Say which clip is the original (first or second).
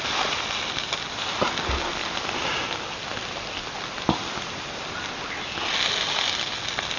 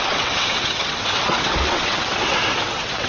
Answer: first